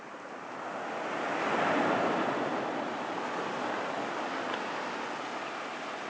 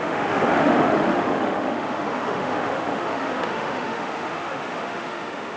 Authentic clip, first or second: first